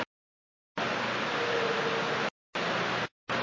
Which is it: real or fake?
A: real